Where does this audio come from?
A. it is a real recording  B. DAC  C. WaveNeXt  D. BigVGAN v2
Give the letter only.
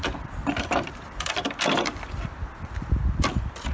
D